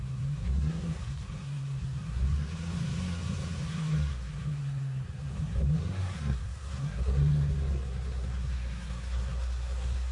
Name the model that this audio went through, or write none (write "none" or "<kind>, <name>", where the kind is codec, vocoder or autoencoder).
codec, SNAC